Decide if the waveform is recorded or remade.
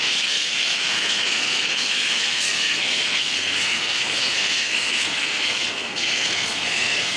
remade